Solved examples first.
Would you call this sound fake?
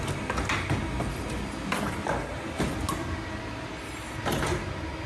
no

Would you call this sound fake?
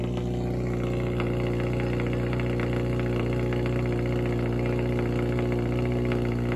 no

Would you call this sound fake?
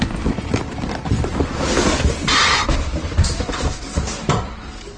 yes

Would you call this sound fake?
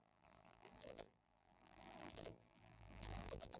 yes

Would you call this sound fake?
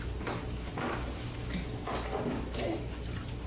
no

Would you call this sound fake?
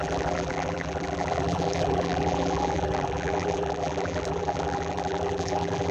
yes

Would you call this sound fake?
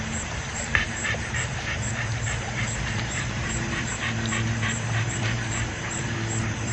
yes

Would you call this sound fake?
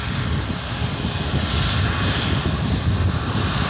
no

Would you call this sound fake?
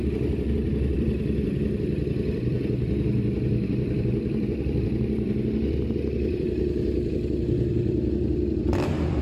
yes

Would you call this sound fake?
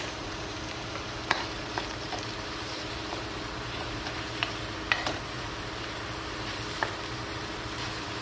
yes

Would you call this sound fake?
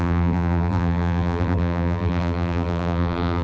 yes